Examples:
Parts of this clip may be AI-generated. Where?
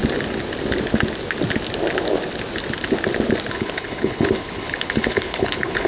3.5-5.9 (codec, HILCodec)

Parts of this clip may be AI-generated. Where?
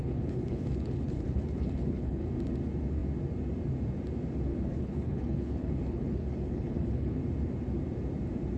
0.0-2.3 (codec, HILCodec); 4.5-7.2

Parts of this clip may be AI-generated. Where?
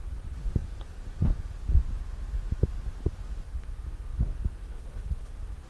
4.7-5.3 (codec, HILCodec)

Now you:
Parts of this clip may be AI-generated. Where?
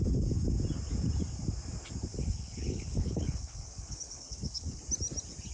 2.1-4.8 (codec, HILCodec)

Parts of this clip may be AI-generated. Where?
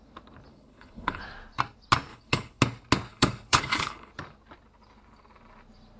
0.5-1.2 (codec, HILCodec); 2.1-2.6; 3.1-4.1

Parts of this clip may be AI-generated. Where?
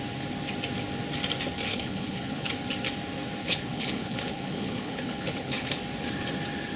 1.7-2.5 (codec, HILCodec); 3.4-5.8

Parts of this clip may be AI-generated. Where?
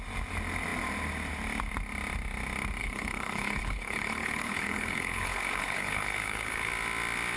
2.8-6.7 (codec, HILCodec)